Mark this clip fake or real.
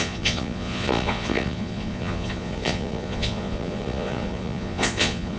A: fake